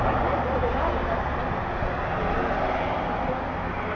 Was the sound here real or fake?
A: real